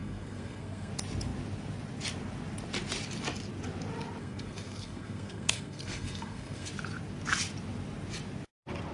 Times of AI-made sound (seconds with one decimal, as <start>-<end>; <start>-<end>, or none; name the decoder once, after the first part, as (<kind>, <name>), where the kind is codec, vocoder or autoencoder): 0.0-0.9 (codec, SNAC); 4.2-6.7